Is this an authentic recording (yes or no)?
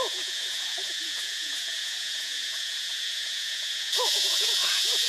no